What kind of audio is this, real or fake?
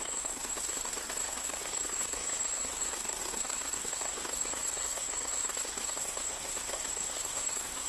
fake